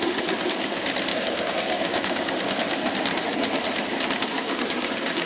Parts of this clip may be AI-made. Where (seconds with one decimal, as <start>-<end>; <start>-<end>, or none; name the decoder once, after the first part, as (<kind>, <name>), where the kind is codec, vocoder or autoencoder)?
1.1-2.2 (codec, DAC); 4.4-5.3